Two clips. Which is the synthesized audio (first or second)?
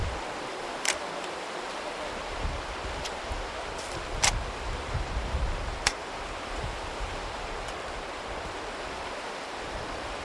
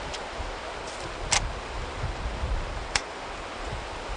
first